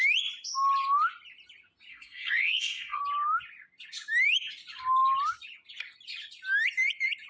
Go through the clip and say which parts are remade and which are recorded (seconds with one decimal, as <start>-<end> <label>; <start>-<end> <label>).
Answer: 0.0-1.9 recorded; 1.9-3.0 remade; 3.0-7.3 recorded